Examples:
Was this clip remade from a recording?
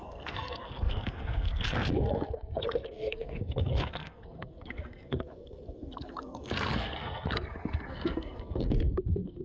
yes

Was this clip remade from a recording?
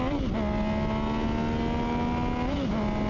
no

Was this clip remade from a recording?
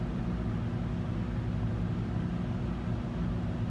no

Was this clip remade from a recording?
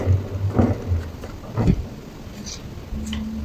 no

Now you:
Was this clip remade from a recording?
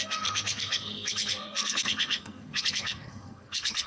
yes